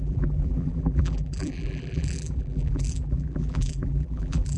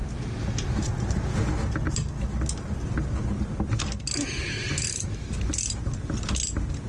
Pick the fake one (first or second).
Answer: first